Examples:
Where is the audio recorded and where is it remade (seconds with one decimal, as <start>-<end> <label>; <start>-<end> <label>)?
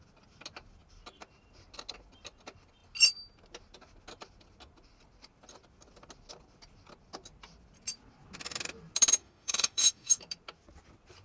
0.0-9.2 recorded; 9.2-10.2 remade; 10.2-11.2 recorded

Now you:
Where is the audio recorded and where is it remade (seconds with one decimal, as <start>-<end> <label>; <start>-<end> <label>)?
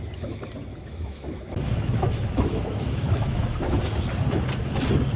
0.0-0.7 recorded; 0.7-3.8 remade; 3.8-5.2 recorded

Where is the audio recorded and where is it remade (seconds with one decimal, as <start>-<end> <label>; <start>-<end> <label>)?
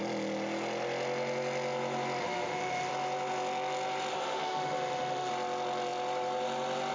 0.0-2.2 recorded; 2.2-2.9 remade; 2.9-4.1 recorded; 4.1-5.3 remade; 5.3-6.9 recorded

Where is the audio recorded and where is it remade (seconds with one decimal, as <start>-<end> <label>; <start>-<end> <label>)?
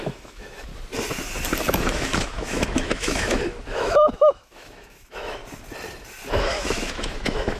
0.0-0.7 remade; 0.7-1.7 recorded; 1.7-5.4 remade; 5.4-6.3 recorded; 6.3-7.6 remade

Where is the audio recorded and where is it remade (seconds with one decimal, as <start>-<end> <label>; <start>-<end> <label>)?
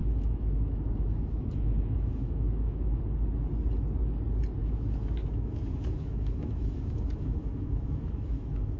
0.0-3.0 remade; 3.0-4.6 recorded; 4.6-8.8 remade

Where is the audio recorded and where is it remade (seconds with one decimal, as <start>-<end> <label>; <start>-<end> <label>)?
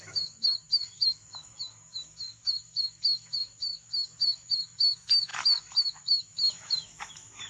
0.0-7.5 remade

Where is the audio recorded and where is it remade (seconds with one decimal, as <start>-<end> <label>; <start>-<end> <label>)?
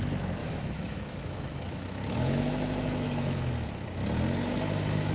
0.0-0.4 recorded; 0.4-3.5 remade; 3.5-5.1 recorded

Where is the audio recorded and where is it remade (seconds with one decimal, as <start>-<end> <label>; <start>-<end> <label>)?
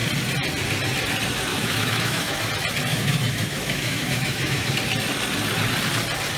0.0-1.5 recorded; 1.5-2.5 remade; 2.5-2.9 recorded; 2.9-4.7 remade; 4.7-6.4 recorded